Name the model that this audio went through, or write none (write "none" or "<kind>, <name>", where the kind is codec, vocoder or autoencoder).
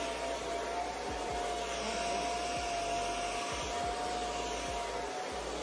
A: none